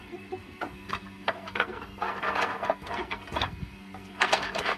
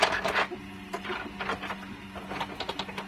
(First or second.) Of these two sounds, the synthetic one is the first